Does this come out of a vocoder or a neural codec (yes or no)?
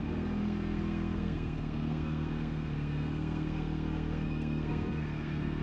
yes